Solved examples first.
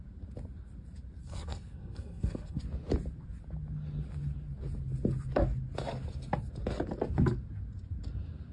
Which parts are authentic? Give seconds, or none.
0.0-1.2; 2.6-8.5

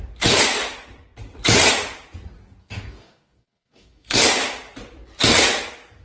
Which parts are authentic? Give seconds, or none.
0.0-2.6; 4.2-6.0

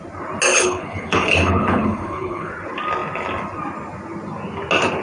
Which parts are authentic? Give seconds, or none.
0.0-0.5; 2.5-5.0